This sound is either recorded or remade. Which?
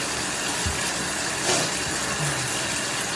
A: recorded